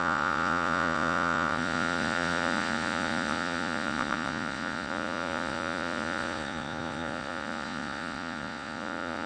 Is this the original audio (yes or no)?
no